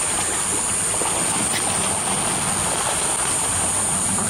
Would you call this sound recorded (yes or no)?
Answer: yes